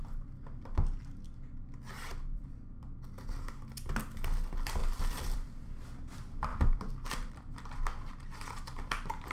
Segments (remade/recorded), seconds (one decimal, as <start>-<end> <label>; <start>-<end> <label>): 0.0-4.8 recorded; 4.8-5.6 remade; 5.6-6.5 recorded; 6.5-7.3 remade; 7.3-9.3 recorded